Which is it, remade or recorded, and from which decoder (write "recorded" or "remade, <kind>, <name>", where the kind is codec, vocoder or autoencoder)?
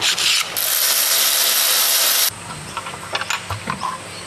recorded